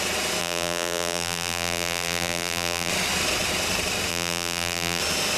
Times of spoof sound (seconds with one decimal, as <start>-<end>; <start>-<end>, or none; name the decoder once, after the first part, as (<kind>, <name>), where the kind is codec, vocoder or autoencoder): 0.4-2.9 (vocoder, BigVGAN v2); 4.1-5.0